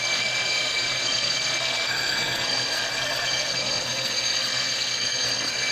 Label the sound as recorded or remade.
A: remade